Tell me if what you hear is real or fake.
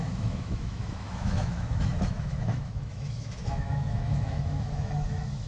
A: fake